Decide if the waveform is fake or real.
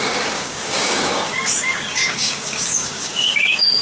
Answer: fake